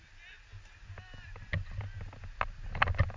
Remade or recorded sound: recorded